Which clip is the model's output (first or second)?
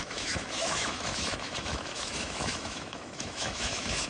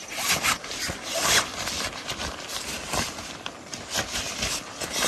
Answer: first